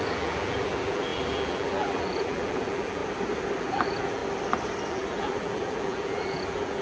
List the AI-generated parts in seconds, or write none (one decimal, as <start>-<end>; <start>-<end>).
0.0-3.0; 3.6-4.2; 4.9-6.8